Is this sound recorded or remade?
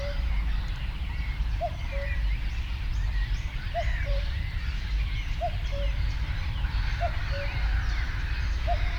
remade